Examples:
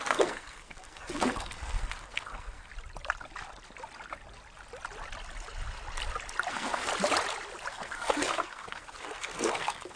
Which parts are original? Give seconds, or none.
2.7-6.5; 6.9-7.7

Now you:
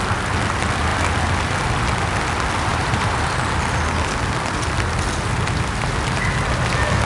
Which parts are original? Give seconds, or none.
0.0-2.7; 3.4-7.1

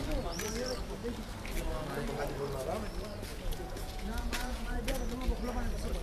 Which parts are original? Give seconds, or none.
0.0-3.3; 5.0-6.0

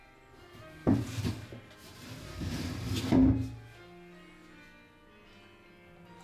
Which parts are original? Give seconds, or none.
3.0-6.2

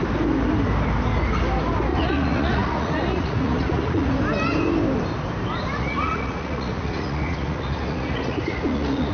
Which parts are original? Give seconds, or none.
0.0-1.9; 4.1-5.7

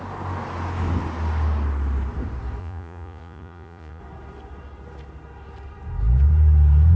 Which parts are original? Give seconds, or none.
0.0-2.6; 4.0-7.0

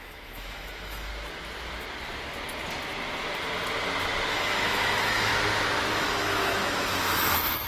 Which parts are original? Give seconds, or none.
1.1-4.3; 5.3-5.9